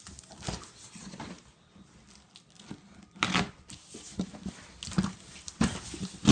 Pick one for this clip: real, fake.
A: real